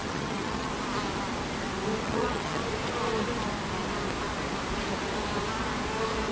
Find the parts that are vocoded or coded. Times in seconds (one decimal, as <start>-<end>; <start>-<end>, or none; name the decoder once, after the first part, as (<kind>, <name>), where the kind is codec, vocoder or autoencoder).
0.0-0.7 (vocoder, HiFi-GAN); 2.0-2.6